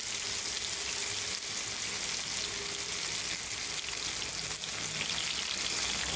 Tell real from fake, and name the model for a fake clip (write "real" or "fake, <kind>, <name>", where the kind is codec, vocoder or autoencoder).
real